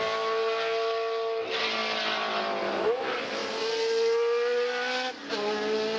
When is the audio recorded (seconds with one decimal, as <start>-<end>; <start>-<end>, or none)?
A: 0.0-6.0